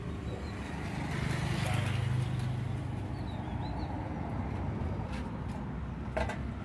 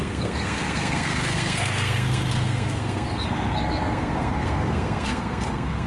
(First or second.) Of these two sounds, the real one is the first